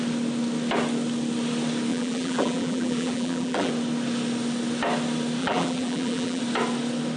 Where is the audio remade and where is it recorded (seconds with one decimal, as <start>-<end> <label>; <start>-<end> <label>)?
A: 0.0-1.9 recorded; 1.9-3.7 remade; 3.7-5.4 recorded; 5.4-6.4 remade; 6.4-7.2 recorded